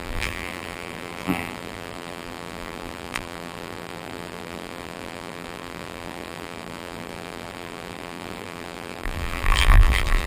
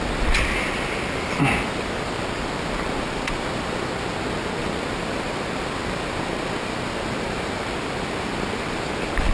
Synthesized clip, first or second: first